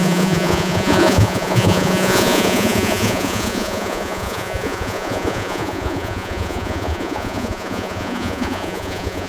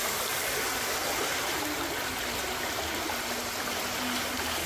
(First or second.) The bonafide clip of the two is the second